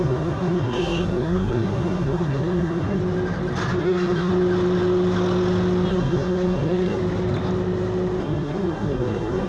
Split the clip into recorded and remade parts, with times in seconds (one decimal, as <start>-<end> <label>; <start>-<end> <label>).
0.0-3.0 remade; 3.0-3.8 recorded; 3.8-4.3 remade; 4.3-5.9 recorded; 5.9-7.0 remade; 7.0-8.2 recorded; 8.2-9.5 remade